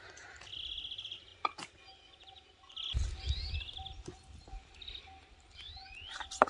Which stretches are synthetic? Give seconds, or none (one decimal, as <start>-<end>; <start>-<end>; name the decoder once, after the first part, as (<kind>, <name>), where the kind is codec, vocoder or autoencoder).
none